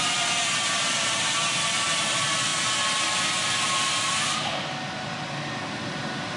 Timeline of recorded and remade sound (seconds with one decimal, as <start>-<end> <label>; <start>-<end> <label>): 0.0-6.4 recorded